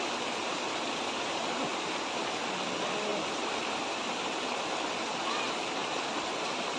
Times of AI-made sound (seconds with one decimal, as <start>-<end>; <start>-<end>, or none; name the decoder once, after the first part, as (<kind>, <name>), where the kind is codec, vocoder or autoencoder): 5.8-6.8 (vocoder, BigVGAN v2)